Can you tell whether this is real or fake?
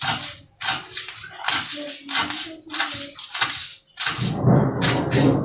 real